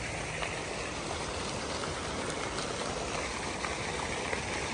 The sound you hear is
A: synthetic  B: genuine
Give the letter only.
B